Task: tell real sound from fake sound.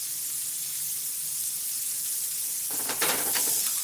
real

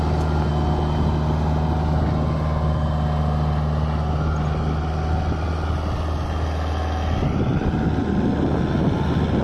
real